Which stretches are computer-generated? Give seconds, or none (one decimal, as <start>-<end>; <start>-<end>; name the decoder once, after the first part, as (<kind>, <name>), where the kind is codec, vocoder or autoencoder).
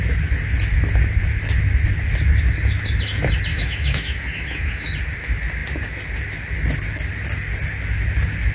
3.5-4.9 (autoencoder, DAC-VAE)